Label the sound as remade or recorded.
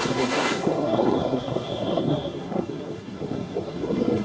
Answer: remade